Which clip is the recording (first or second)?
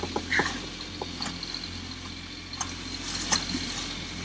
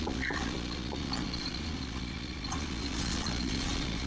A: first